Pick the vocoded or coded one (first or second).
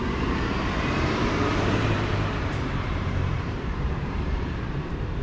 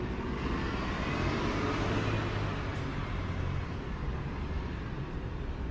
first